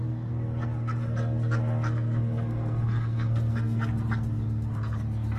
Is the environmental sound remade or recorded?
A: remade